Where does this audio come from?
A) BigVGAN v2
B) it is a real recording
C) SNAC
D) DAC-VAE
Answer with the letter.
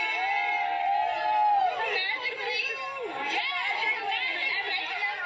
B